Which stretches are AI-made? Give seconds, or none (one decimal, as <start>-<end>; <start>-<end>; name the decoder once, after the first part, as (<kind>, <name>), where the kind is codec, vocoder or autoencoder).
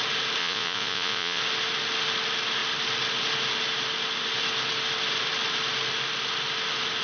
0.4-1.4 (vocoder, Vocos)